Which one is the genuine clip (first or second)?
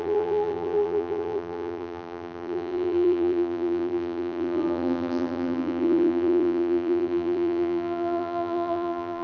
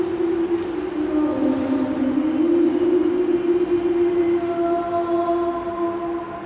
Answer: second